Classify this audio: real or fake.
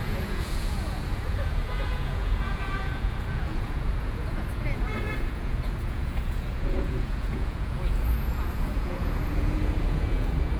fake